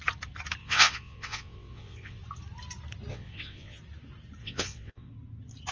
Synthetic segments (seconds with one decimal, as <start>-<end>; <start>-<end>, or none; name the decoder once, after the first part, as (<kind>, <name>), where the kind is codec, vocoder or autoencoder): 0.6-2.2 (vocoder, WaveNeXt); 3.1-3.8; 4.4-5.1